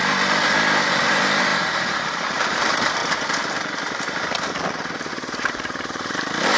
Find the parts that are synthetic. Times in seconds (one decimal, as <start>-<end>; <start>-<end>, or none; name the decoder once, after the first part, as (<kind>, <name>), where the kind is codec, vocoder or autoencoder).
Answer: 0.6-6.6 (vocoder, BigVGAN v2)